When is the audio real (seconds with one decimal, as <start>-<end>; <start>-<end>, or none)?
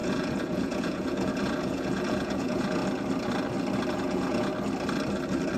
2.8-3.9; 4.5-5.6